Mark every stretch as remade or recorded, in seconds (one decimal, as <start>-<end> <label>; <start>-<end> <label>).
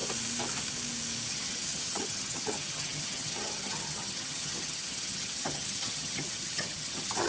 0.0-1.3 recorded; 1.3-7.3 remade